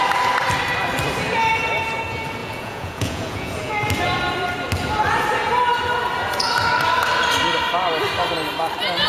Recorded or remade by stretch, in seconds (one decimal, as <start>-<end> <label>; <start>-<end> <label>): 0.0-2.4 recorded; 2.4-3.7 remade; 3.7-9.1 recorded